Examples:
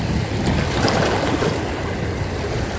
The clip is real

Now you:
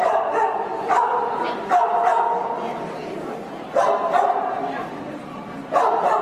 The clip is fake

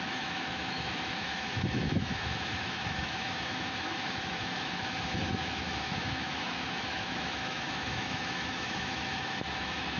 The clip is fake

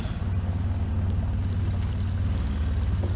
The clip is real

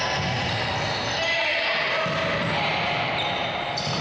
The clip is real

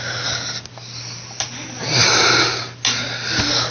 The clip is real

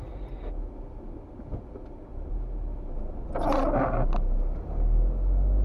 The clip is real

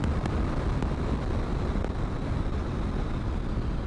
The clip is real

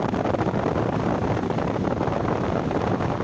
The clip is fake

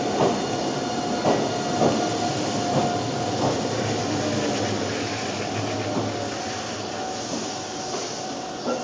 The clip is real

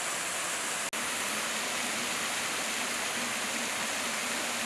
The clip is real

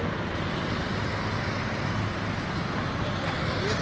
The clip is real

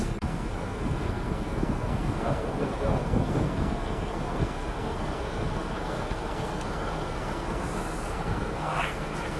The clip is fake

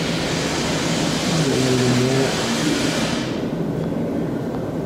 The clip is real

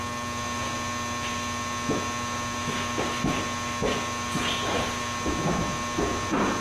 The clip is real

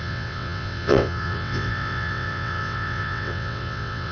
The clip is fake